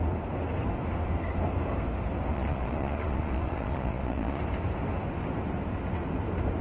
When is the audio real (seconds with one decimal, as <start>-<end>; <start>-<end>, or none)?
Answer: 0.0-2.3; 4.4-6.6